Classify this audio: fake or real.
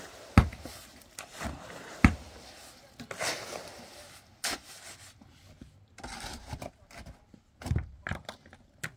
real